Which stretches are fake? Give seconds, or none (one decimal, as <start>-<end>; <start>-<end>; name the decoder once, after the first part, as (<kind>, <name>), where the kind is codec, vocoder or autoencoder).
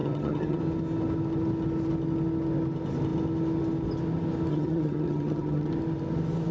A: 0.0-0.6 (vocoder, HiFi-GAN); 4.5-5.7